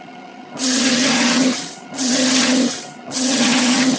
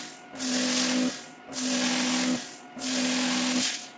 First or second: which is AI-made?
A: first